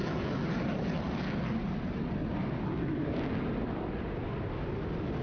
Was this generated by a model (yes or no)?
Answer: no